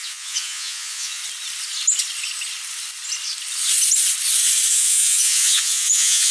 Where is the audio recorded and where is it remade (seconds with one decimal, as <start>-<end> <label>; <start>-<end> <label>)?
0.0-1.2 remade; 1.2-4.7 recorded; 4.7-6.3 remade